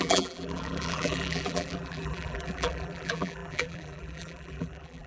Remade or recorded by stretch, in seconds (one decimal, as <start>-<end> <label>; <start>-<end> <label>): 0.0-5.1 remade